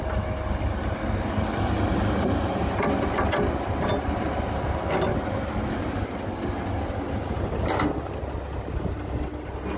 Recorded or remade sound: recorded